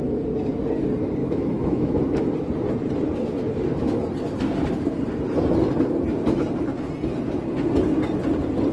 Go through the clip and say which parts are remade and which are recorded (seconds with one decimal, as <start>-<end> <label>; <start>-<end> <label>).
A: 0.0-1.2 recorded; 1.2-2.3 remade; 2.3-8.7 recorded